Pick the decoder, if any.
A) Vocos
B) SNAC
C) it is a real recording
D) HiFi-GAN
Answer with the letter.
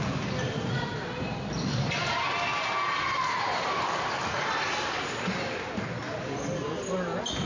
C